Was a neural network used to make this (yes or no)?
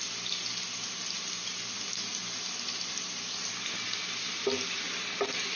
no